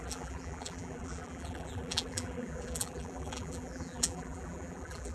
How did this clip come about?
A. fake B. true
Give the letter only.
A